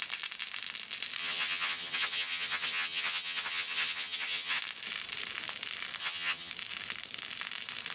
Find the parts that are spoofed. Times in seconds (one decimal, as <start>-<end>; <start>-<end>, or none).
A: 1.2-4.6; 6.0-6.5